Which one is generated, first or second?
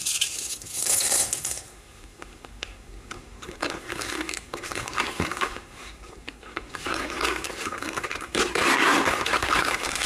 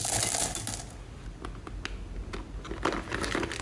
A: first